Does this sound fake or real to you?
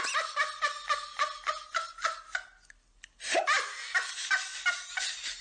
real